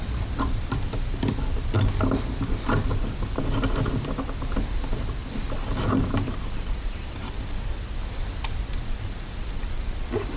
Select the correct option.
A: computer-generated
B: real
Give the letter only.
B